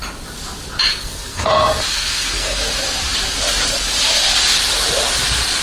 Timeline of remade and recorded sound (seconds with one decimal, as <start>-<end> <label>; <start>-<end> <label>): 0.0-0.9 recorded; 0.9-1.5 remade; 1.5-1.9 recorded; 1.9-2.6 remade; 2.6-5.6 recorded